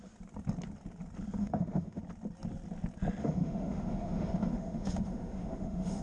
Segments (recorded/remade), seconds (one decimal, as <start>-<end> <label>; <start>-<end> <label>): 0.0-1.4 recorded; 1.4-2.0 remade; 2.0-3.2 recorded; 3.2-6.0 remade